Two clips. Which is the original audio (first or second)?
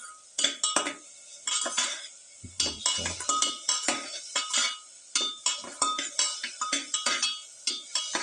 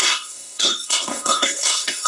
first